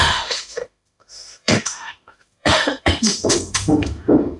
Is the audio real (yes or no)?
no